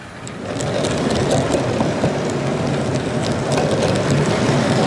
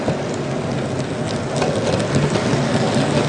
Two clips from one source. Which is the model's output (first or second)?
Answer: first